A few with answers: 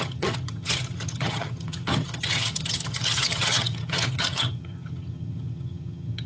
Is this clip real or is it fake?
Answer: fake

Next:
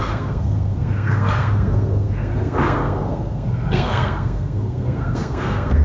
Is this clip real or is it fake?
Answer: fake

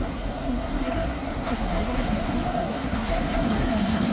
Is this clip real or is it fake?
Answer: fake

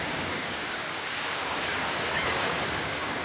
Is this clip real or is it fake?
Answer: fake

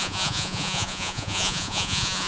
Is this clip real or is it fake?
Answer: fake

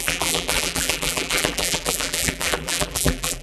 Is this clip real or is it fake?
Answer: fake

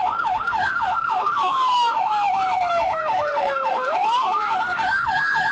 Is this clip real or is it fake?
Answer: fake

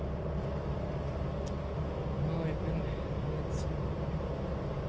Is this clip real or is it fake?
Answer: real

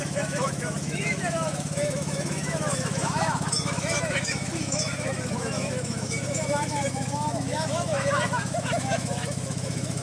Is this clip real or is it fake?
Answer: fake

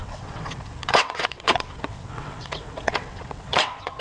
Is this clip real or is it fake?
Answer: fake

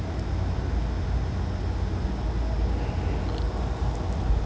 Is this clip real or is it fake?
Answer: real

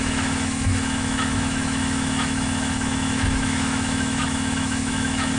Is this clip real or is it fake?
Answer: fake